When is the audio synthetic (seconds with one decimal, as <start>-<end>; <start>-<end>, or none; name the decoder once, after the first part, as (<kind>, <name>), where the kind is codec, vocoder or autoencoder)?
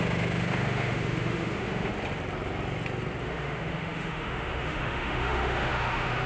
0.0-1.9 (autoencoder, DAC-VAE); 3.2-6.3